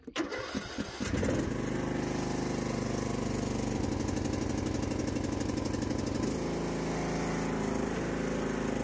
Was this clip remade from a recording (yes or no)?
no